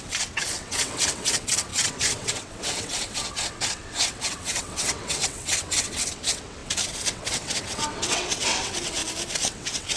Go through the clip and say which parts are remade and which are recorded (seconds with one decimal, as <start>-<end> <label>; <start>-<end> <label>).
0.0-9.0 remade; 9.0-9.5 recorded; 9.5-10.0 remade